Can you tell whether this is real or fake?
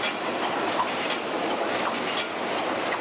real